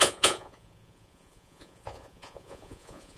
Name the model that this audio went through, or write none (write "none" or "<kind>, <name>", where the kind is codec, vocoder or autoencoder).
vocoder, Vocos